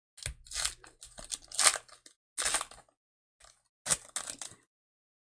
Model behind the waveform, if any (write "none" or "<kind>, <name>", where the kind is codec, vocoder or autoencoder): none